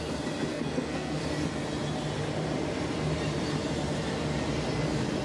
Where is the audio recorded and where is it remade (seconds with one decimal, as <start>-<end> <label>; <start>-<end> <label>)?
0.0-0.5 recorded; 0.5-1.2 remade; 1.2-5.2 recorded